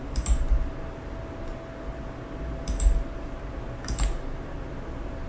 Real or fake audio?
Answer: real